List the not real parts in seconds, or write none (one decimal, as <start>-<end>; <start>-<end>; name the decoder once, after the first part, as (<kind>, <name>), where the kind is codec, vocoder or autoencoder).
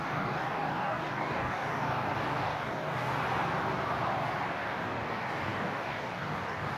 0.0-3.1 (codec, DAC); 4.5-6.8